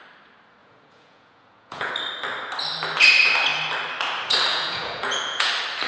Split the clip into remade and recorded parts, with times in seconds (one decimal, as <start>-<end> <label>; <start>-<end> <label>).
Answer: 0.0-0.6 recorded; 0.6-1.9 remade; 1.9-4.5 recorded; 4.5-5.5 remade; 5.5-5.9 recorded